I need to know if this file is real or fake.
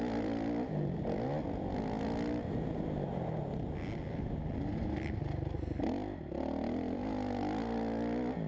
real